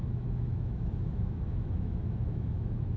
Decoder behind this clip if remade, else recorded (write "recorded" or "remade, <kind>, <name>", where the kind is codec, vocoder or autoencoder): remade, autoencoder, DAC-VAE